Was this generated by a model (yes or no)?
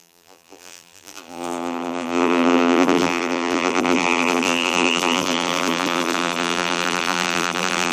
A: yes